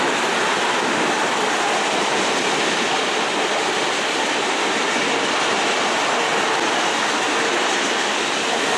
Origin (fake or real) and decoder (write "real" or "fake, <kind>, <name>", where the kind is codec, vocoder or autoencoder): real